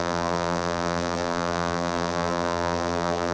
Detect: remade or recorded remade